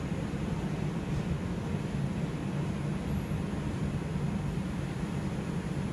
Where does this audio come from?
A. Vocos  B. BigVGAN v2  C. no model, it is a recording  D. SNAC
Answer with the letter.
C